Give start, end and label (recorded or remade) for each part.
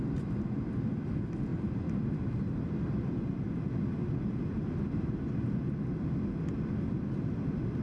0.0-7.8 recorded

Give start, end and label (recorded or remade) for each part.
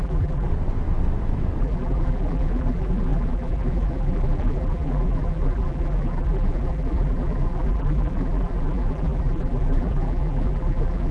0.0-0.5 remade; 0.5-1.6 recorded; 1.6-11.1 remade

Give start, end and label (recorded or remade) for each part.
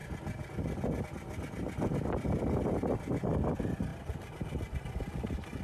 0.0-3.9 recorded; 3.9-5.6 remade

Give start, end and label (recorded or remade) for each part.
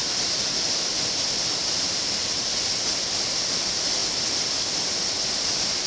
0.0-5.9 recorded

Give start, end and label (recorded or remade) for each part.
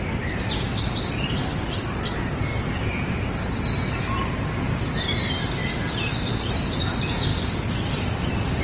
0.0-1.5 remade; 1.5-3.3 recorded; 3.3-5.6 remade; 5.6-6.7 recorded; 6.7-7.3 remade; 7.3-8.6 recorded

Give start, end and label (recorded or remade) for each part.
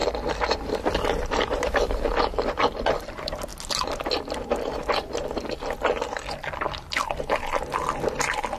0.0-3.5 remade; 3.5-6.5 recorded; 6.5-8.6 remade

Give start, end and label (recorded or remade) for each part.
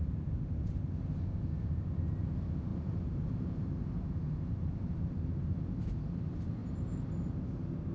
0.0-2.7 recorded; 2.7-3.7 remade; 3.7-7.9 recorded